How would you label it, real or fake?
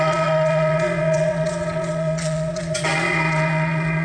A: fake